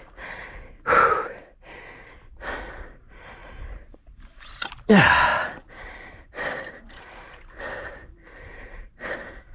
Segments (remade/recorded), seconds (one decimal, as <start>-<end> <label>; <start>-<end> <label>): 0.0-3.4 recorded; 3.4-4.0 remade; 4.0-5.3 recorded; 5.3-9.1 remade; 9.1-9.5 recorded